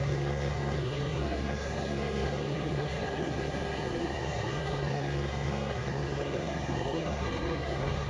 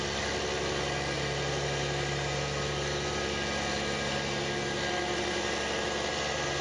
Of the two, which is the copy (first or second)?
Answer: first